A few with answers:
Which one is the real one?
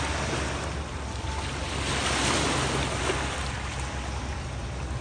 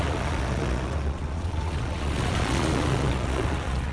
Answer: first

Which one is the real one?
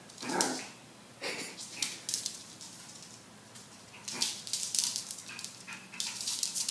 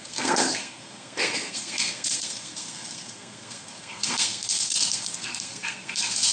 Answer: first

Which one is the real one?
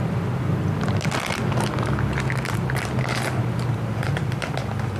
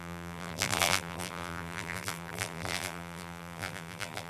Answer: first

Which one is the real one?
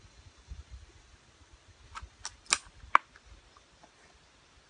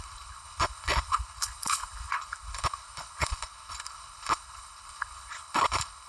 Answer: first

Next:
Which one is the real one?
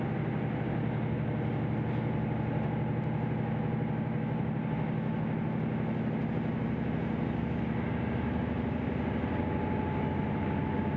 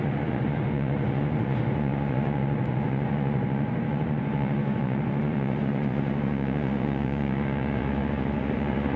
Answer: first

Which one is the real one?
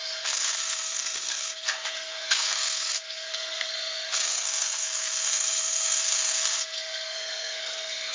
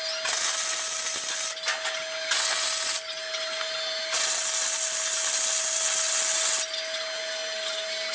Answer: second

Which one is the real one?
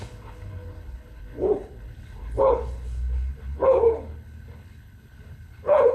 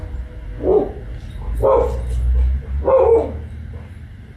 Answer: second